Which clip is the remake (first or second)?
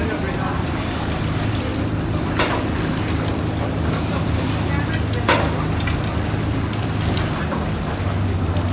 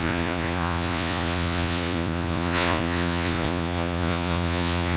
second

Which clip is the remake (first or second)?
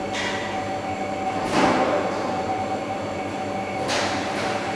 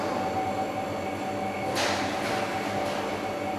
first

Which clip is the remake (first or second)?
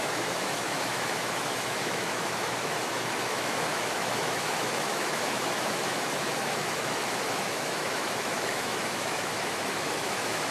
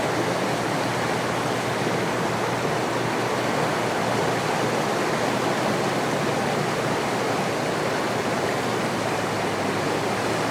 first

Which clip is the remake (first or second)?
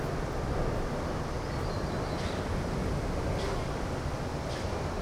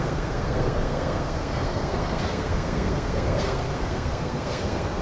second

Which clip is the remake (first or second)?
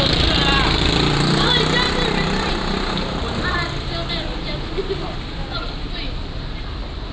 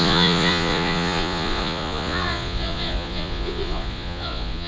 second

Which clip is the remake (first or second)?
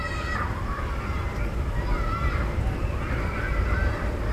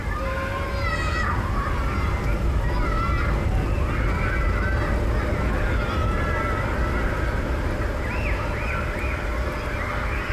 first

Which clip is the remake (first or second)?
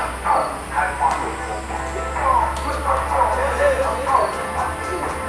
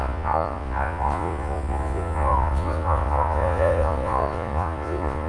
second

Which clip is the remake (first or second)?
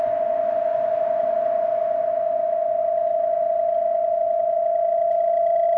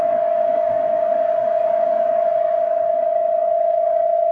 second